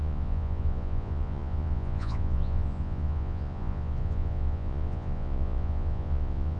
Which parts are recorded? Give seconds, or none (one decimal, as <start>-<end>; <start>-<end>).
none